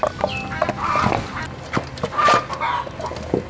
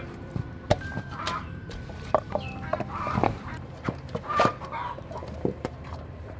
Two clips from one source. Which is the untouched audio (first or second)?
first